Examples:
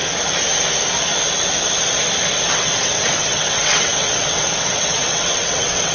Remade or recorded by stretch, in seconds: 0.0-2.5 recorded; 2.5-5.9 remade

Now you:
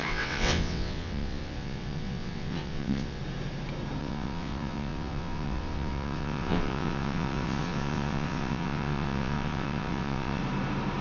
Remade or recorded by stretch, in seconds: 0.0-3.2 remade; 3.2-4.0 recorded; 4.0-10.4 remade; 10.4-11.0 recorded

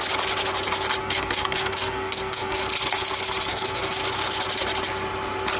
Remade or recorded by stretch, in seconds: 0.0-1.0 recorded; 1.0-2.6 remade; 2.6-3.5 recorded; 3.5-4.0 remade; 4.0-5.6 recorded

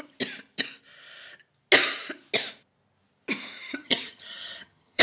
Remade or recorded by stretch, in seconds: 0.0-3.7 recorded; 3.7-5.0 remade